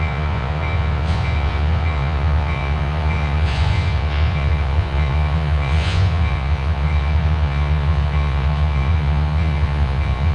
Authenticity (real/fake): fake